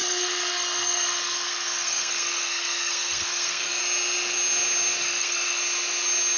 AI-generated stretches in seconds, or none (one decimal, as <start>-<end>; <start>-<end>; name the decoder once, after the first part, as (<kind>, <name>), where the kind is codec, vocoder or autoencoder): 0.0-3.8 (codec, SNAC); 5.0-5.6